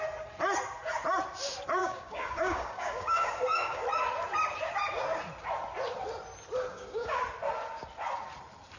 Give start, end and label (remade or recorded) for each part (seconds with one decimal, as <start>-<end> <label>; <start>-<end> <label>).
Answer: 0.0-1.8 recorded; 1.8-3.8 remade; 3.8-6.7 recorded; 6.7-7.2 remade; 7.2-8.8 recorded